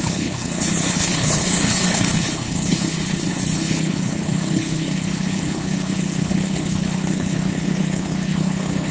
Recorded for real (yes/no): no